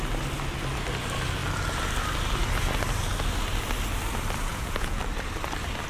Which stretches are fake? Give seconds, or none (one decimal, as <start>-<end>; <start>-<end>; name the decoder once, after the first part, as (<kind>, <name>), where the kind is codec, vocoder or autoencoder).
4.5-5.0 (vocoder, Vocos)